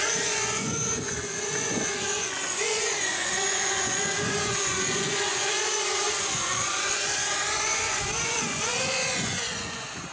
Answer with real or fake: fake